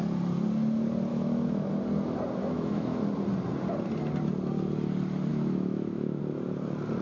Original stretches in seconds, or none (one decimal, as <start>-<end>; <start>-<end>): 0.0-1.1; 1.7-2.4; 3.0-5.3; 6.2-7.0